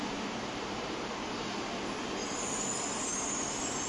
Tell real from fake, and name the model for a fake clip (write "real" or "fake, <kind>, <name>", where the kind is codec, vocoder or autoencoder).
real